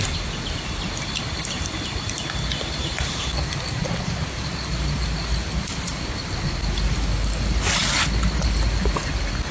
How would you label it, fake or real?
real